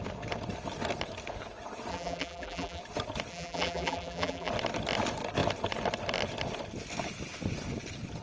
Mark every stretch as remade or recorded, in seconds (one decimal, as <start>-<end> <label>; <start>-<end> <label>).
0.0-1.9 recorded; 1.9-2.8 remade; 2.8-3.3 recorded; 3.3-4.5 remade; 4.5-8.2 recorded